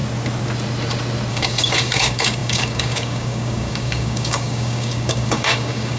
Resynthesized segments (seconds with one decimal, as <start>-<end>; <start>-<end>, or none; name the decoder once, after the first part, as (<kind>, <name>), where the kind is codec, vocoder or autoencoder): 1.3-6.0 (codec, DAC)